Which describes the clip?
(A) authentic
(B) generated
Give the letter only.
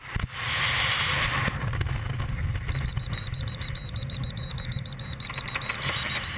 A